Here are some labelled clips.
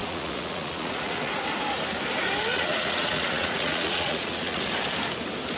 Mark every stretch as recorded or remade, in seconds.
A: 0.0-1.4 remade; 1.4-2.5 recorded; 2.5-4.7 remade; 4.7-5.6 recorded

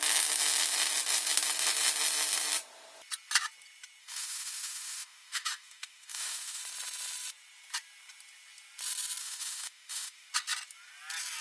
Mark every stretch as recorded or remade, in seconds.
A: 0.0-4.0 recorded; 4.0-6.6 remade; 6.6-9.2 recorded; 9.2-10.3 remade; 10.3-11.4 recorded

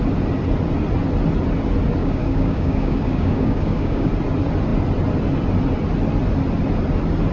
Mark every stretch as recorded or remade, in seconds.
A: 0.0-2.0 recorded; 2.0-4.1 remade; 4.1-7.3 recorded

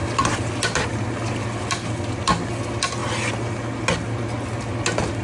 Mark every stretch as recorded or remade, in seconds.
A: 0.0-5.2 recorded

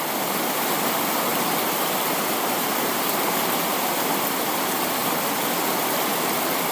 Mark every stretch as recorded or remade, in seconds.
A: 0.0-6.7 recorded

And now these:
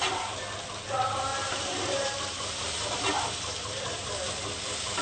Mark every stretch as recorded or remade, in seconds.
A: 0.0-1.3 recorded; 1.3-4.3 remade; 4.3-5.0 recorded

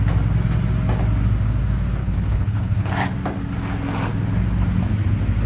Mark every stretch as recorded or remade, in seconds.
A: 0.0-2.0 recorded; 2.0-2.9 remade; 2.9-5.5 recorded

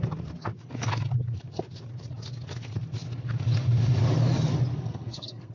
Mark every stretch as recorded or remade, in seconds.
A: 0.0-4.7 recorded; 4.7-5.5 remade